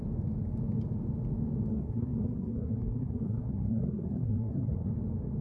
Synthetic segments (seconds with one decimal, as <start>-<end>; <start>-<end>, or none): 1.7-4.9